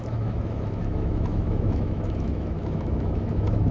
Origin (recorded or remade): remade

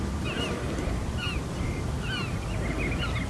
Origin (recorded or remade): recorded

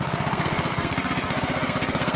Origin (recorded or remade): remade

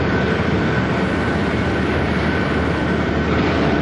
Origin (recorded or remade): remade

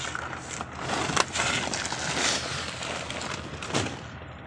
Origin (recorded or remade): recorded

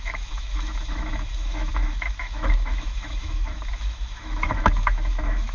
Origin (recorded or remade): remade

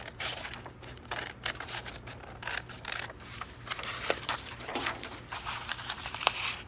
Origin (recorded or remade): remade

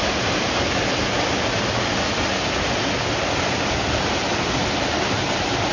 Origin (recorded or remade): recorded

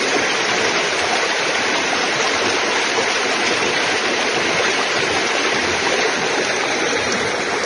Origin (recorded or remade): remade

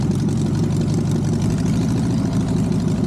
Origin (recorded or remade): recorded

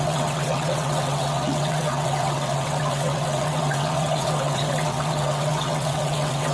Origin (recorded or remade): remade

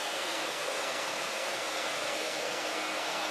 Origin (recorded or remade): remade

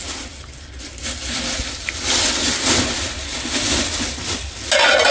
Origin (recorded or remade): recorded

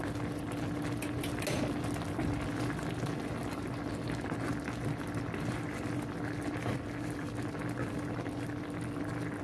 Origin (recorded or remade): recorded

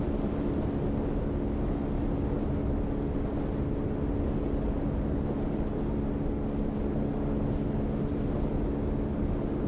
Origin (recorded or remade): recorded